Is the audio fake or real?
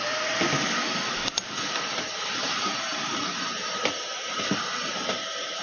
fake